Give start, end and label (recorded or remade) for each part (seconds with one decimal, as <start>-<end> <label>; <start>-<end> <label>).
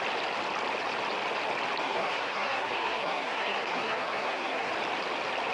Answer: 0.0-1.8 recorded; 1.8-4.7 remade; 4.7-5.5 recorded